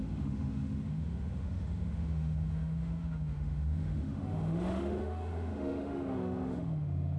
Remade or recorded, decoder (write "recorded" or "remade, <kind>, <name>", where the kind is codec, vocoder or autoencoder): remade, autoencoder, DAC-VAE